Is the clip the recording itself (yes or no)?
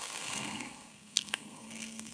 no